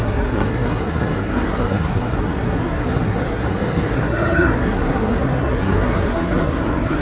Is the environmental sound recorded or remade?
remade